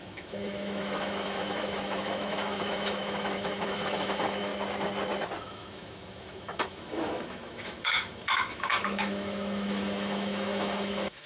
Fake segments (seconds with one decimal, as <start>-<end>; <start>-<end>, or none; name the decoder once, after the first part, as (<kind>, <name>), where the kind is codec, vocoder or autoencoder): 0.0-4.5 (autoencoder, DAC-VAE); 5.4-11.3